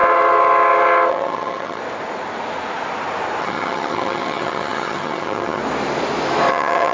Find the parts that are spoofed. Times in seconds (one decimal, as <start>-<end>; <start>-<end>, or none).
1.1-1.8; 3.4-5.6; 6.5-6.9